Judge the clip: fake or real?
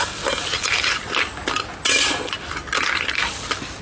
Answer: real